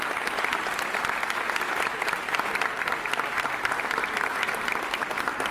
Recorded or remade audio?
recorded